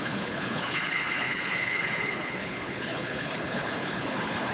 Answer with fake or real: fake